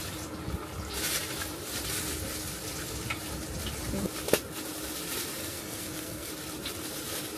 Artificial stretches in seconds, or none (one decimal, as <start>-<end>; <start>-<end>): 5.4-6.3